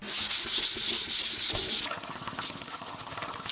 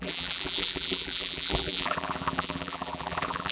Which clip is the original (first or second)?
first